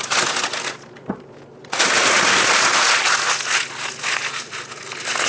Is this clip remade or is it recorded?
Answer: recorded